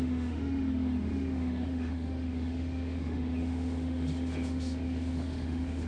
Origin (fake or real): fake